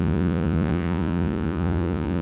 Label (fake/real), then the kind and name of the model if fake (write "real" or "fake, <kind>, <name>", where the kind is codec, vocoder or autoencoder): fake, vocoder, Vocos